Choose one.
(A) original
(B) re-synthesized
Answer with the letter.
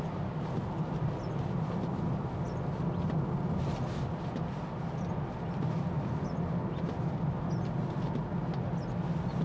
A